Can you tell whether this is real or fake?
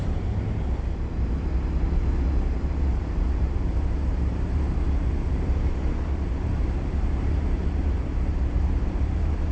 fake